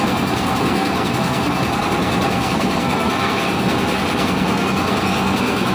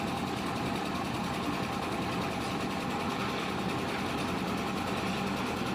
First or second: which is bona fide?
second